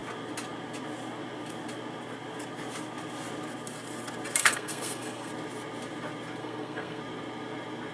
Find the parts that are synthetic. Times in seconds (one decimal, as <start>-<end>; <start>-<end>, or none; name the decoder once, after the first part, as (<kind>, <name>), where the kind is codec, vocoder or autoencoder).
4.4-5.3 (codec, SNAC); 6.4-7.0